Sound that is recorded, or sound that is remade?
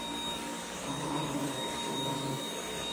remade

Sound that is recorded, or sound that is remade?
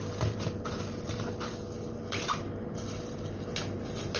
recorded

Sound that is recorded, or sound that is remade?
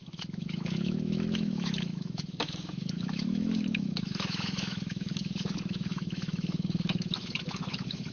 remade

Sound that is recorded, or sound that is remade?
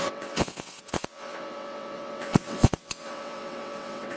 remade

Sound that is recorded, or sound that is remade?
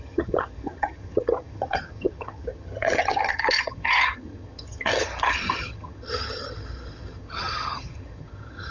remade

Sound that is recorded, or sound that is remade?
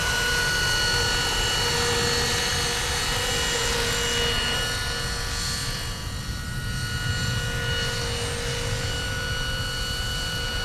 recorded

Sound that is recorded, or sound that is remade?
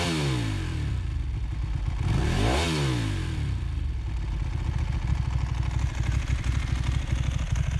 recorded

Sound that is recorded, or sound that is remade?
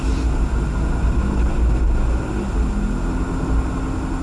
recorded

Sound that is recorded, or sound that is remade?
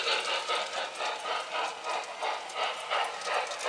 recorded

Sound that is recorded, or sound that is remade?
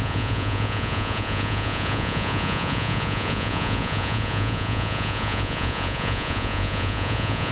remade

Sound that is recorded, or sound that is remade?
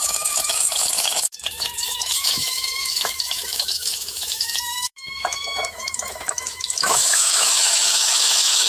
remade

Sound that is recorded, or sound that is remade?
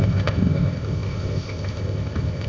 remade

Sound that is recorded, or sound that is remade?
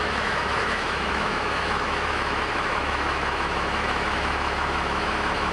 remade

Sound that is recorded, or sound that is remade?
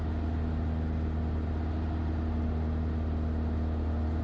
recorded